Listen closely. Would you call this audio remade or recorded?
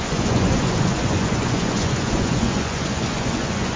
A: remade